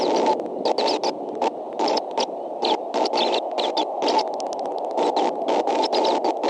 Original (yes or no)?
yes